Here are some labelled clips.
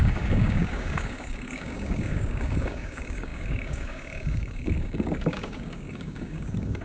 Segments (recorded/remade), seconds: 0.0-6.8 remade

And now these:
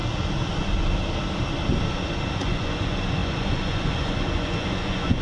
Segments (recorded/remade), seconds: 0.0-2.4 recorded; 2.4-5.2 remade

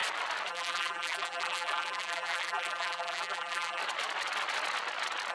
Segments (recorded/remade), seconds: 0.0-0.5 recorded; 0.5-3.8 remade; 3.8-5.3 recorded

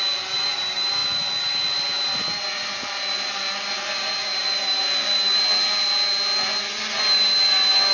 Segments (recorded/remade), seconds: 0.0-7.9 recorded

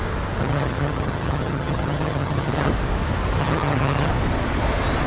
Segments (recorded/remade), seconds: 0.0-0.4 recorded; 0.4-2.7 remade; 2.7-3.4 recorded; 3.4-4.1 remade; 4.1-5.1 recorded

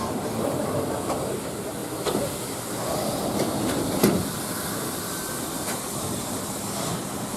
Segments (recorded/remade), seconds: 0.0-7.4 remade

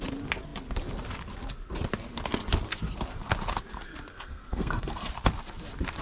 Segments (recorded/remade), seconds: 0.0-4.1 recorded; 4.1-5.1 remade; 5.1-6.0 recorded